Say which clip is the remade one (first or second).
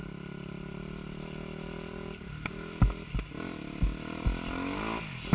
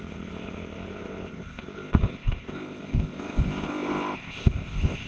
second